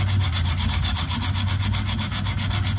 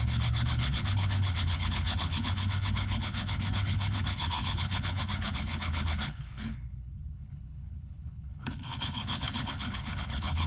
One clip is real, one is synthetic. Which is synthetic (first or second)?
second